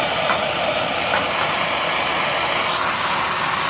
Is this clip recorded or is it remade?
recorded